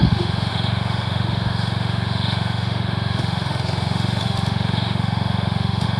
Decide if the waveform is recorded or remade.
remade